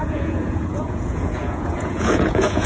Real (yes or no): no